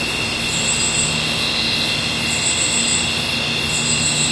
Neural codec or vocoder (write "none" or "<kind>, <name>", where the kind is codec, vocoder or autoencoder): none